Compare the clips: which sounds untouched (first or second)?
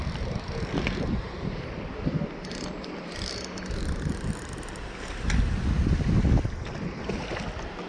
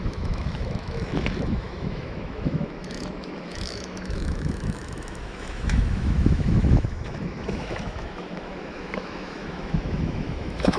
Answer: first